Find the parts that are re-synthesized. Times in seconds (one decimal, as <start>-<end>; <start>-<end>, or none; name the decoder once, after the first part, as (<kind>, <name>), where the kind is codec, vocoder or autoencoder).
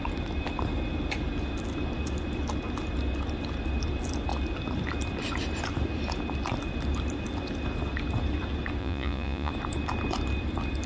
8.8-9.5 (vocoder, Vocos)